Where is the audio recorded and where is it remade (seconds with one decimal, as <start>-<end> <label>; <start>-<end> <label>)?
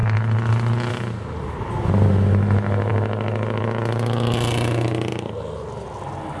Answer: 0.0-6.4 recorded